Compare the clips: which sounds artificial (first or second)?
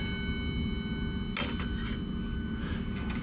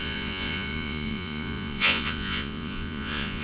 second